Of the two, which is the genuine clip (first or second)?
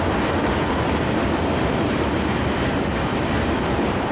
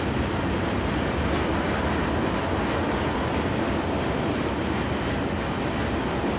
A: second